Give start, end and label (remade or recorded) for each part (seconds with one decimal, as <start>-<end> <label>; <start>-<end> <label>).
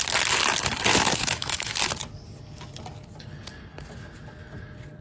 0.0-0.9 recorded; 0.9-1.7 remade; 1.7-5.0 recorded